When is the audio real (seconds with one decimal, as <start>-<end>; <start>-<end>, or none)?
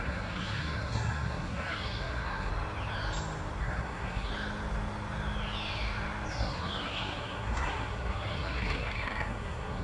2.5-3.6; 4.3-6.3